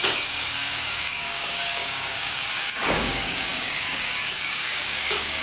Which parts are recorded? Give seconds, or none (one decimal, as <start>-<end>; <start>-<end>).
none